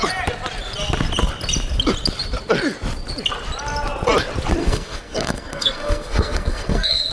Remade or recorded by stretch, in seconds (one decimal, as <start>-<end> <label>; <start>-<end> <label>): 0.0-4.6 recorded; 4.6-7.1 remade